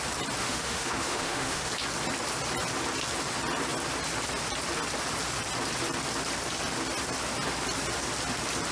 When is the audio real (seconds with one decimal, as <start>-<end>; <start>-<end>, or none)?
0.0-0.4; 1.7-8.7